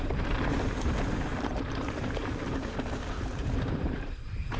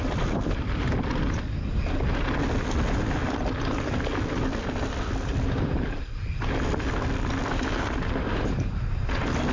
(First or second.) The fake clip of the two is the first